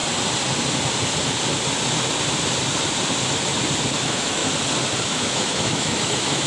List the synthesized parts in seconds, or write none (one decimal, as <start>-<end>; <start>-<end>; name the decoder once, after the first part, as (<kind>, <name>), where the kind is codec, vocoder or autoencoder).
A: 3.9-4.4 (autoencoder, DAC-VAE); 5.0-6.5